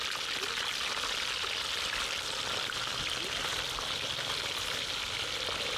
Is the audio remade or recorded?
recorded